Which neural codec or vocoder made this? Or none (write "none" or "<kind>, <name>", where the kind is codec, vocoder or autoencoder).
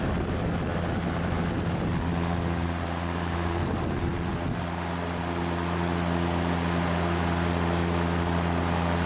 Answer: none